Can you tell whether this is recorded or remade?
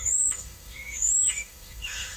remade